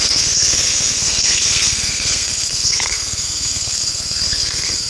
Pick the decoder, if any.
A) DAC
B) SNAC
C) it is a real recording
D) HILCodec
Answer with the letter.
B